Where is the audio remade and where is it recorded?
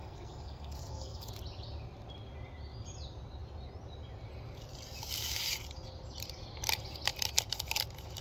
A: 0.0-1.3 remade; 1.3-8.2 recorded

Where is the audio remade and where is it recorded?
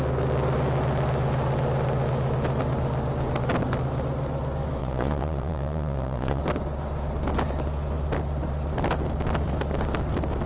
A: 0.0-4.8 recorded; 4.8-6.4 remade; 6.4-10.5 recorded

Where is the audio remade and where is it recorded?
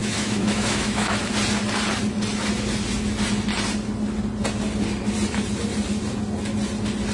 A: 0.0-1.2 remade; 1.2-7.1 recorded